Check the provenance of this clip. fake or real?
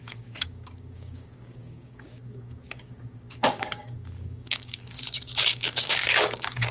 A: fake